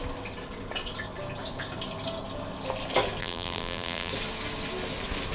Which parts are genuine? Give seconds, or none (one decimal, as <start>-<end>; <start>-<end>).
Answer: 0.0-3.2; 4.1-5.3